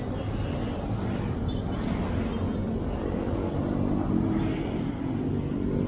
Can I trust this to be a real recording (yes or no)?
yes